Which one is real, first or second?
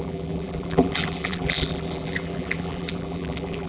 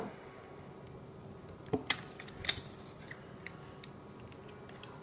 second